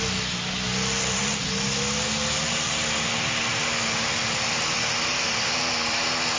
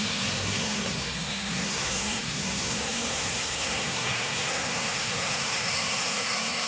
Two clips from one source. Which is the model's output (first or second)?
second